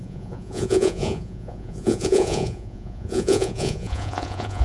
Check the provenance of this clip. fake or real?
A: fake